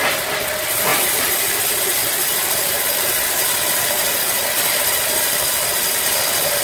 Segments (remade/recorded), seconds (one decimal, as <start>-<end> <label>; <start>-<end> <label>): 0.0-0.9 recorded; 0.9-1.6 remade; 1.6-3.4 recorded; 3.4-4.8 remade; 4.8-6.6 recorded